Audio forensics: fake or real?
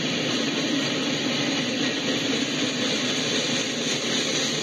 real